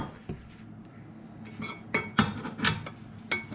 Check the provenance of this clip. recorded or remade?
recorded